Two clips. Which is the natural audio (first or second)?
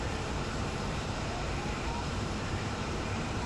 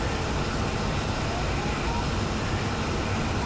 second